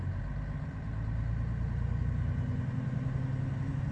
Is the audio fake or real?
real